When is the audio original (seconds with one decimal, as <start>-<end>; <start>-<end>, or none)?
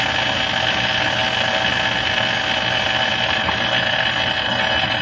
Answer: 0.0-5.0